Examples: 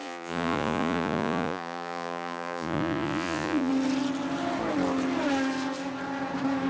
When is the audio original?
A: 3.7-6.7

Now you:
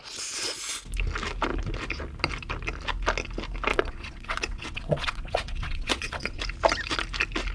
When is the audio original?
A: 0.0-3.7; 6.4-7.5

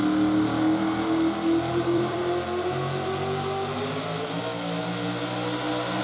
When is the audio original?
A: 0.0-1.7; 2.2-6.0

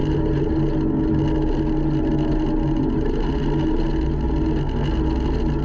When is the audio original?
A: 0.0-5.6

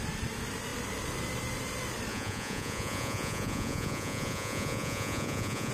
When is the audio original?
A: 0.0-2.1